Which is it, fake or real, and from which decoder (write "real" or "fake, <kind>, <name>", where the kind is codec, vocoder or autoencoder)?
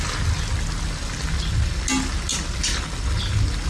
real